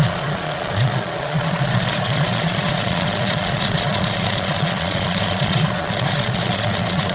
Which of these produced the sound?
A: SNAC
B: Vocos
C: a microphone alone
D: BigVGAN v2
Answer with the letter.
B